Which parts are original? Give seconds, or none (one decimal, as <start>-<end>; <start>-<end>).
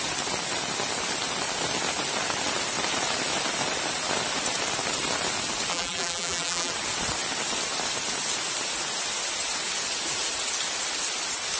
0.0-5.7; 6.7-11.6